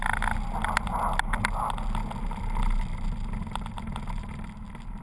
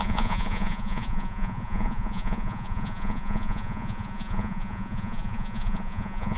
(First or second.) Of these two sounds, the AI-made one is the second